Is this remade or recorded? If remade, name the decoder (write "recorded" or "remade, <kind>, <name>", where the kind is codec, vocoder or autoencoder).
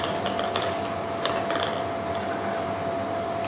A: recorded